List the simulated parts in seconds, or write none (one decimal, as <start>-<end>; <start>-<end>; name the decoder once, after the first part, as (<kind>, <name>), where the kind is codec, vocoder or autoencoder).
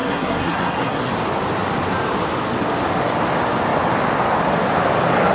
0.0-1.1 (codec, SNAC)